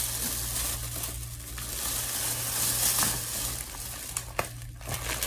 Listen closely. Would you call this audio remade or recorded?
recorded